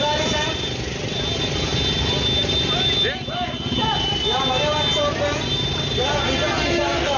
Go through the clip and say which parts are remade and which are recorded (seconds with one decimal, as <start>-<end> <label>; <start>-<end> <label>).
0.0-7.2 recorded